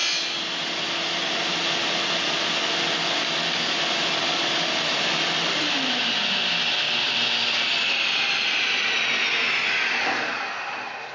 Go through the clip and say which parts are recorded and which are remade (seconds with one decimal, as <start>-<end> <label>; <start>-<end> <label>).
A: 0.0-11.1 recorded